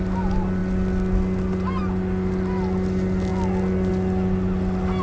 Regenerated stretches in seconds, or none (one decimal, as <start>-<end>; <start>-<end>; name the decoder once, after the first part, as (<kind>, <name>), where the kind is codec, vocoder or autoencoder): none